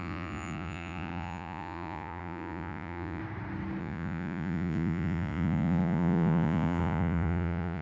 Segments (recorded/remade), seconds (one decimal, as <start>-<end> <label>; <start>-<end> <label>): 0.0-3.2 remade; 3.2-3.8 recorded; 3.8-7.8 remade

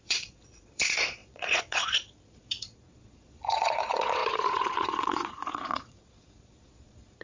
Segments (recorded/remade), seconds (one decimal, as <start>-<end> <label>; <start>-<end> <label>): 0.0-7.2 remade

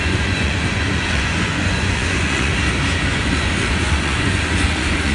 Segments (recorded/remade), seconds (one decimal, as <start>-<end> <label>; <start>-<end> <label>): 0.0-2.5 remade; 2.5-3.1 recorded; 3.1-5.1 remade

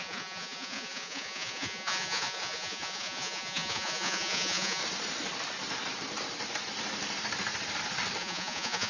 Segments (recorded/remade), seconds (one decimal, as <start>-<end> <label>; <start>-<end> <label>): 0.0-4.8 remade; 4.8-8.2 recorded; 8.2-8.9 remade

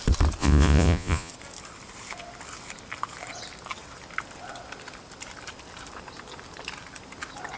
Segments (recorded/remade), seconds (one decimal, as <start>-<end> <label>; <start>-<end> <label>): 0.0-0.4 recorded; 0.4-1.3 remade; 1.3-7.6 recorded

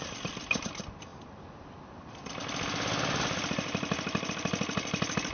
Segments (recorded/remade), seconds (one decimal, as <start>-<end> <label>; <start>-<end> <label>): 0.0-5.3 recorded

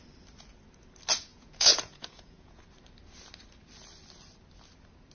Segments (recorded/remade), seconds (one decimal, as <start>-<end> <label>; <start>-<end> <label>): 0.0-1.3 recorded; 1.3-2.6 remade; 2.6-5.1 recorded